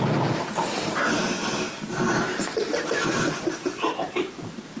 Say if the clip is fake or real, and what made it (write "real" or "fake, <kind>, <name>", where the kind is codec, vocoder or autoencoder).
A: real